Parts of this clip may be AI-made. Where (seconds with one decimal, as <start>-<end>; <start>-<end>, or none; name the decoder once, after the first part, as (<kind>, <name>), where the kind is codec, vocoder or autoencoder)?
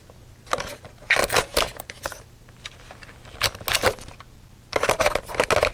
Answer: 1.2-2.7 (vocoder, BigVGAN v2)